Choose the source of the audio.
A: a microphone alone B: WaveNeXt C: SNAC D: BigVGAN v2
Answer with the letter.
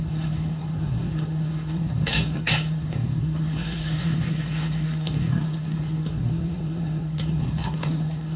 C